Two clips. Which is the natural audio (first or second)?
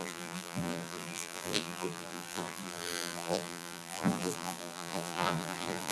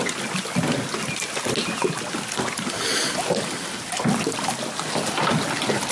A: second